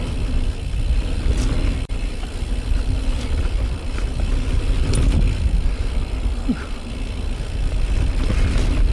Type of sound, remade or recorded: recorded